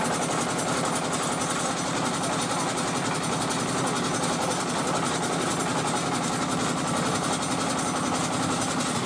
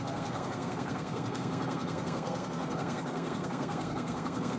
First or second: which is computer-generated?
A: second